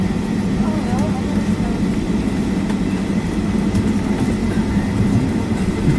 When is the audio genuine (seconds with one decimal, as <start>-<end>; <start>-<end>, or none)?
0.0-4.4; 5.6-6.0